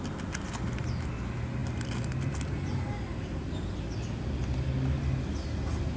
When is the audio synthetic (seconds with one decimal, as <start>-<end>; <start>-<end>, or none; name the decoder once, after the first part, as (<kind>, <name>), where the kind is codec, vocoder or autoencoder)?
none